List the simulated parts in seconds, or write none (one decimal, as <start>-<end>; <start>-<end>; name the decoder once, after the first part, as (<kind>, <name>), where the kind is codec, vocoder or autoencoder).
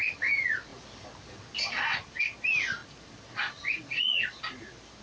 none